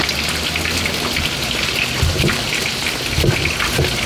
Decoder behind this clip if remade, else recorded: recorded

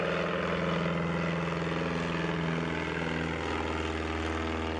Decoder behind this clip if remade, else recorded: recorded